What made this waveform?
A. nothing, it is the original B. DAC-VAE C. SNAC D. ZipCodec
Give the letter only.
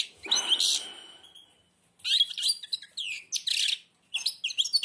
A